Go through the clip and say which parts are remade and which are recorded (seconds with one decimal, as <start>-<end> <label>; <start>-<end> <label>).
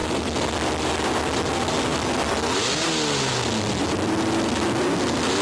0.0-5.4 recorded